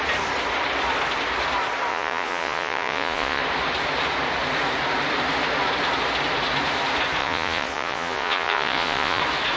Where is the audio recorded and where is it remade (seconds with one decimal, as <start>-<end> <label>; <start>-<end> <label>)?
0.0-1.9 recorded; 1.9-3.4 remade; 3.4-7.2 recorded; 7.2-9.2 remade; 9.2-9.6 recorded